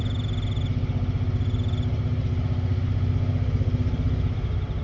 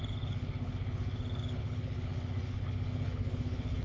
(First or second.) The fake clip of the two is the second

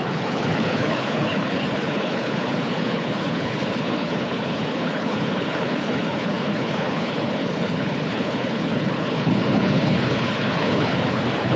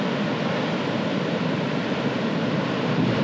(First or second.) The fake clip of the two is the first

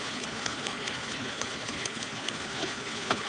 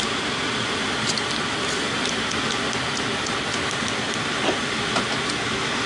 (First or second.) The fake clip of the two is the first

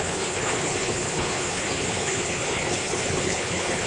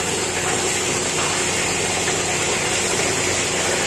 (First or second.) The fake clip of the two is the first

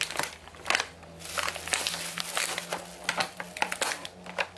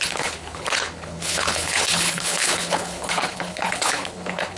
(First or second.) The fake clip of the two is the second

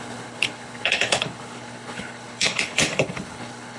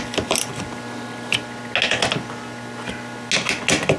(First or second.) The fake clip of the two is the first